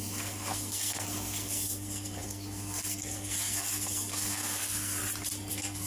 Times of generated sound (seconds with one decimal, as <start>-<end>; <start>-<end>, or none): 0.0-5.0; 5.5-5.9